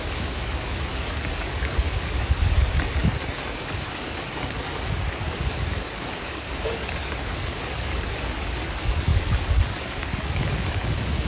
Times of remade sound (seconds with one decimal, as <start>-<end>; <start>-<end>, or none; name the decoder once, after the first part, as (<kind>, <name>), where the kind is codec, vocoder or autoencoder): 0.0-11.3 (codec, DAC)